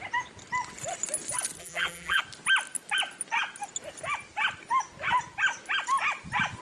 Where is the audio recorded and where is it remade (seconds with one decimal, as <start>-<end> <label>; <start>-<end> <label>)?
0.0-1.6 recorded; 1.6-2.2 remade; 2.2-6.6 recorded